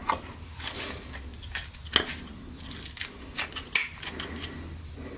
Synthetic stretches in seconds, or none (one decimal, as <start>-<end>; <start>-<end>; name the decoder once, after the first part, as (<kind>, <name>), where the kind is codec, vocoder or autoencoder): none